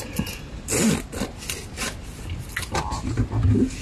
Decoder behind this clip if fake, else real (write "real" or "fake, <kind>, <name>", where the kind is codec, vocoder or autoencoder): real